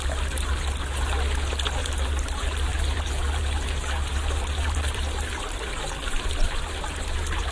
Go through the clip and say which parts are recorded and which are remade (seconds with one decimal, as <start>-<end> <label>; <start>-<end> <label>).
0.0-1.8 recorded; 1.8-5.8 remade; 5.8-7.5 recorded